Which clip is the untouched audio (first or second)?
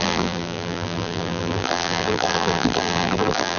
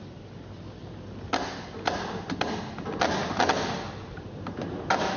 second